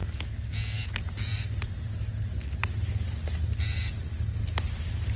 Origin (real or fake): real